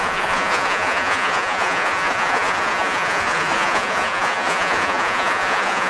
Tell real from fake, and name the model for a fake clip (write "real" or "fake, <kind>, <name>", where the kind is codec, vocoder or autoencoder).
fake, vocoder, Vocos